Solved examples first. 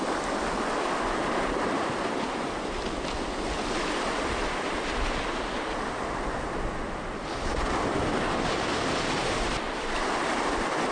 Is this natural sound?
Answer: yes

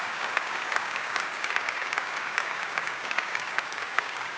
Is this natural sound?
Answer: no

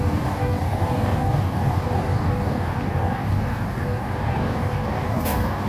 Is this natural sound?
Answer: no